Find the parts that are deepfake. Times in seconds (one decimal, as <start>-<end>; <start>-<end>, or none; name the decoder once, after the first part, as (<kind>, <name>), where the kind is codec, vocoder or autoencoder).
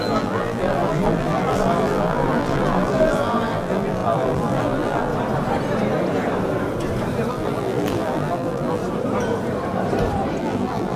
0.0-5.1 (vocoder, BigVGAN v2); 7.3-8.8; 10.4-11.0